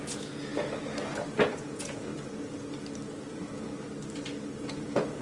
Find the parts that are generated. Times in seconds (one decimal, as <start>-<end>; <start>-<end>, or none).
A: 0.0-0.5; 1.5-2.1; 3.3-3.7; 4.7-5.2